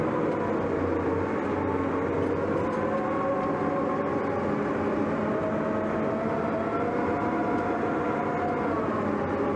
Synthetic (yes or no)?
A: no